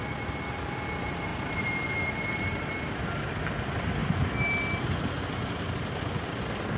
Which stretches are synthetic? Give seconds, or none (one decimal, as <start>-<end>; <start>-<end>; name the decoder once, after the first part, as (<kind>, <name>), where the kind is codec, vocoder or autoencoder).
none